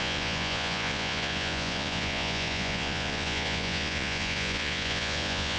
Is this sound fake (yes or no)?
yes